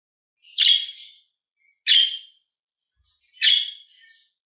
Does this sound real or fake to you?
real